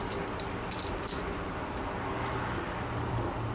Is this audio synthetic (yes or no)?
yes